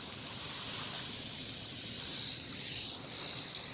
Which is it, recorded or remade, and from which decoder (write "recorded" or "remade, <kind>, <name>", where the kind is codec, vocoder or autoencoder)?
recorded